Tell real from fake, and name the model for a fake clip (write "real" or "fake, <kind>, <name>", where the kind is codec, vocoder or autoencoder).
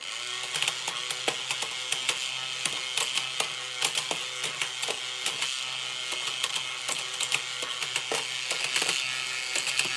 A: real